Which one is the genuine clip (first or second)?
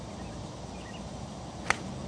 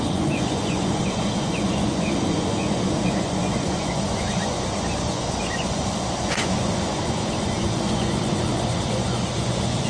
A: first